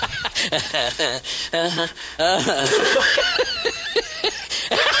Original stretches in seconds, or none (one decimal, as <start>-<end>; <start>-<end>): 0.0-0.7; 2.2-2.6; 3.2-5.0